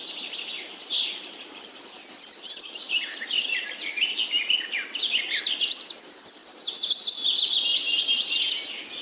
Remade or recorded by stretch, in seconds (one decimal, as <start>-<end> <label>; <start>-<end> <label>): 0.0-3.0 remade; 3.0-9.0 recorded